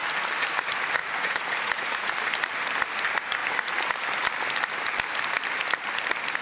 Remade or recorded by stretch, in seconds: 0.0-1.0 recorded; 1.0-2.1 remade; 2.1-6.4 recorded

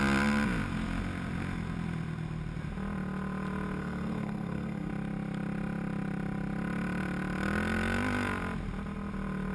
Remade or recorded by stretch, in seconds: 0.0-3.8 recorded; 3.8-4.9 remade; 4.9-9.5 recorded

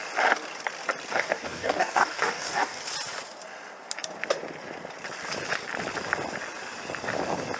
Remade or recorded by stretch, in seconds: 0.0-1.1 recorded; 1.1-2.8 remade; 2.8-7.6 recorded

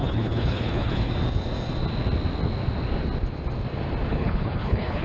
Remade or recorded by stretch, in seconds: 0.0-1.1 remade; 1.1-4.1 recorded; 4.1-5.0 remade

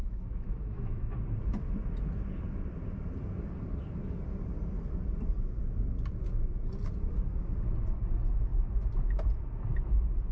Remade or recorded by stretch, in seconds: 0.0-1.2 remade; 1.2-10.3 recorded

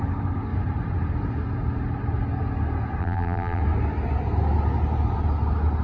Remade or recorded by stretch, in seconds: 0.0-3.0 recorded; 3.0-3.6 remade; 3.6-5.8 recorded